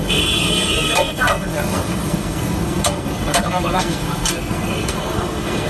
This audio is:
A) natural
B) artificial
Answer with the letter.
B